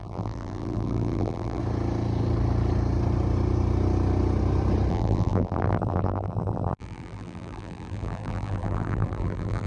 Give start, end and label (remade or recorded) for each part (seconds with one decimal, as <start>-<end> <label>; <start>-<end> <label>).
0.0-1.6 remade; 1.6-4.9 recorded; 4.9-9.7 remade